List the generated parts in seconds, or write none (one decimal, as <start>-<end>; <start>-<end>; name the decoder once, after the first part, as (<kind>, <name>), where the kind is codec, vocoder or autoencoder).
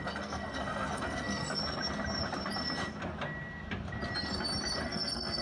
0.0-1.6 (codec, SNAC); 4.8-5.4